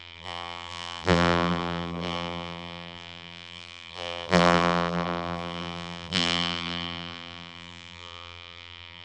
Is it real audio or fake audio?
fake